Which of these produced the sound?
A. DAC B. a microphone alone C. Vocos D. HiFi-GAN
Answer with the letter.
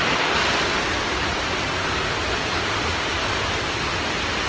B